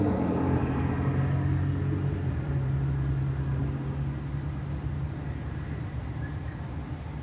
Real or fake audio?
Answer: real